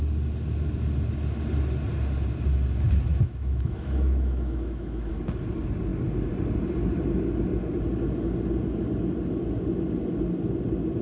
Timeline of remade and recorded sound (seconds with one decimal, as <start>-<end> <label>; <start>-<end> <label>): 0.0-3.1 recorded; 3.1-5.1 remade; 5.1-11.0 recorded